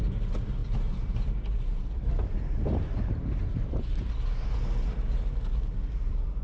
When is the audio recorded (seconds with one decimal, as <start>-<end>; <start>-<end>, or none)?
0.0-0.6; 4.1-6.4